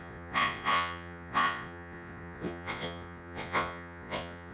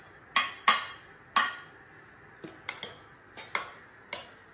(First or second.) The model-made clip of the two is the first